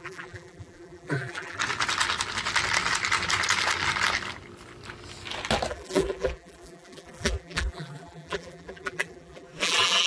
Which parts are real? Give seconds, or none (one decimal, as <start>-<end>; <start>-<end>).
1.6-5.7